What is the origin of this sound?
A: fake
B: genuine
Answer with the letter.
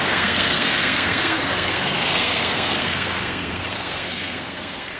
A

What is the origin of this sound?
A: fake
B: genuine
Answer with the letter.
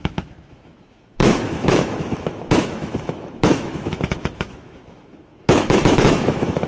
A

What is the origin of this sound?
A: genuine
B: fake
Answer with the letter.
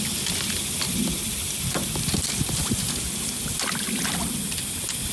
A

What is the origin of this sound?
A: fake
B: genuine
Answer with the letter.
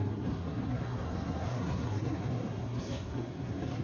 A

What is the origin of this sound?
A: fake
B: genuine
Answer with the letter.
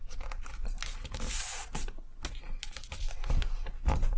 B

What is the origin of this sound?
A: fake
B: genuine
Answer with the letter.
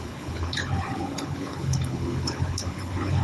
A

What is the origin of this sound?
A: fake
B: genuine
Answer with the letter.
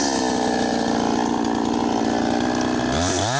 B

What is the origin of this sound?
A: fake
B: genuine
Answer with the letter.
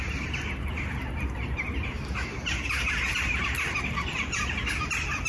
B